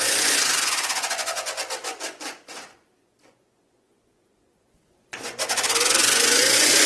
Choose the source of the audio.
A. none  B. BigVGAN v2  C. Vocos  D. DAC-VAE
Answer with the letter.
C